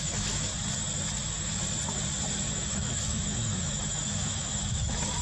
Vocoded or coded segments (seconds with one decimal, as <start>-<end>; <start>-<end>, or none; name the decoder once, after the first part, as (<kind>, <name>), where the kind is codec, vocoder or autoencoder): 0.0-0.5 (autoencoder, DAC-VAE); 1.2-1.6; 2.5-5.2